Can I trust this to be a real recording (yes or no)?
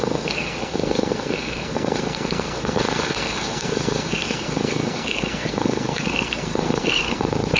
no